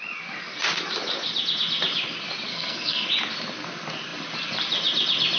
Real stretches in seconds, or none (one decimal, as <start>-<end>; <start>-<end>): 0.0-2.5; 3.1-5.4